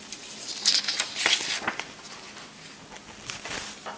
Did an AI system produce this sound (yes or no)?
no